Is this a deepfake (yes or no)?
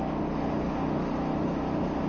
no